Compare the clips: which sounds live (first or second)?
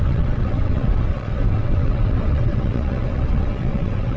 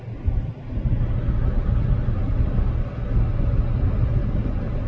second